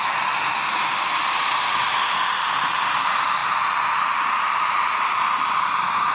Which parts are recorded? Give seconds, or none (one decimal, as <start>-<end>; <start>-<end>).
0.0-6.1